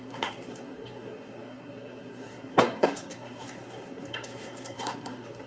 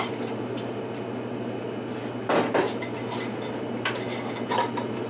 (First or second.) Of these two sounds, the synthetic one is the first